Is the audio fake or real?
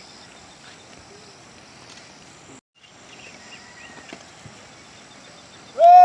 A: real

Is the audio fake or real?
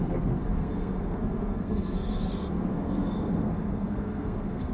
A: fake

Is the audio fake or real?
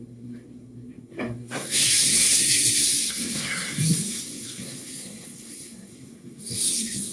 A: fake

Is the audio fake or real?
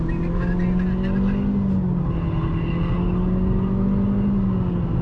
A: real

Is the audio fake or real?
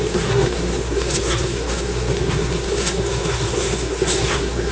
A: fake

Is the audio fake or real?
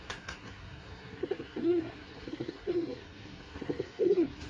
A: fake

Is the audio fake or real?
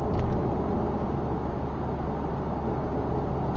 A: real